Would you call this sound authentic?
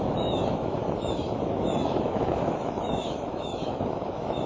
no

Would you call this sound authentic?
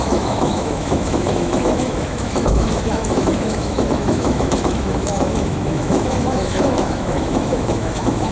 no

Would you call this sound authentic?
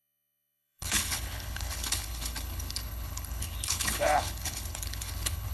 no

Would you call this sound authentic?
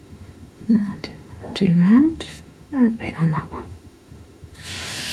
no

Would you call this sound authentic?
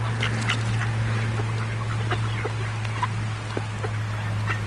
yes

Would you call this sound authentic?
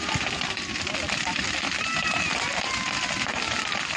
yes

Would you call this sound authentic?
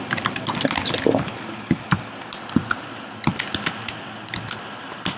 yes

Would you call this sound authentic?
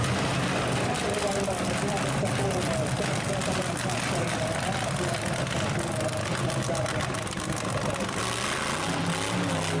yes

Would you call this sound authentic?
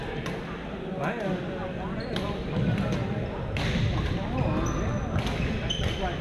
yes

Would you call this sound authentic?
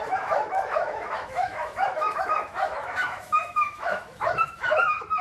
no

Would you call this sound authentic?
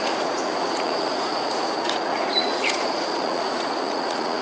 no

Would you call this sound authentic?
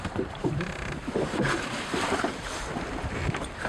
no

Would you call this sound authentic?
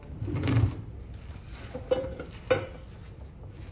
yes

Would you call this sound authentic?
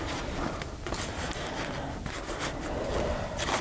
yes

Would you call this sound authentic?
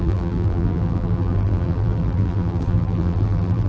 no